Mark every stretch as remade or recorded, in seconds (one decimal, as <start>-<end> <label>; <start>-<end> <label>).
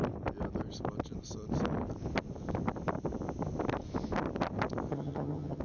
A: 0.0-4.9 recorded; 4.9-5.6 remade